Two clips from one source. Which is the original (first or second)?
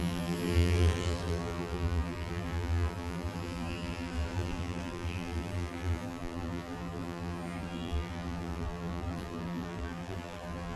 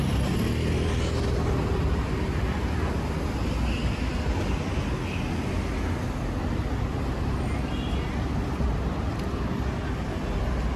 second